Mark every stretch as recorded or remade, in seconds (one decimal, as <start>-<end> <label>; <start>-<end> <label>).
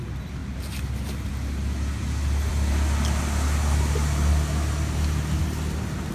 0.0-6.1 recorded